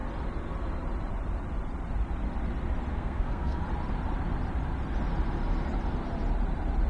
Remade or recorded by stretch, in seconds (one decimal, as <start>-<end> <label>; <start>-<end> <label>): 0.0-2.9 recorded; 2.9-3.6 remade; 3.6-6.9 recorded

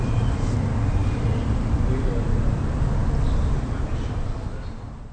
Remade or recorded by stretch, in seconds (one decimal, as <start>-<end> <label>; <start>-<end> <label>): 0.0-5.1 recorded

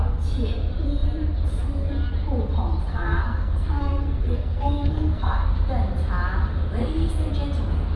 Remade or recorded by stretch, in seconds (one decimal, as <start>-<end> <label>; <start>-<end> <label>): 0.0-2.9 recorded; 2.9-5.5 remade; 5.5-6.8 recorded; 6.8-7.3 remade; 7.3-8.0 recorded

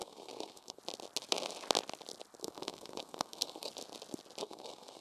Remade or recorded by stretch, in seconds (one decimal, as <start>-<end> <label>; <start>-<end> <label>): 0.0-0.8 remade; 0.8-2.4 recorded; 2.4-3.7 remade; 3.7-4.4 recorded; 4.4-5.0 remade

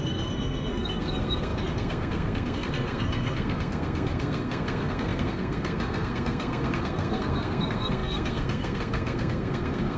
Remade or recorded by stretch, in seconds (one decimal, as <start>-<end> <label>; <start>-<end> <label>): 0.0-10.0 remade

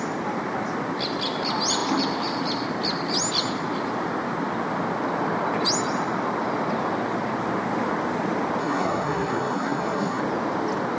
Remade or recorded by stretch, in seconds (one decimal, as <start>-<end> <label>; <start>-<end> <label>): 0.0-8.6 recorded; 8.6-10.2 remade; 10.2-11.0 recorded

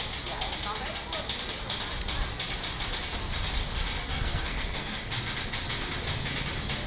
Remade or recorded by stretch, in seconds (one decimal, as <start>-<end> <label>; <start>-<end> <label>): 0.0-4.1 recorded; 4.1-4.9 remade; 4.9-6.9 recorded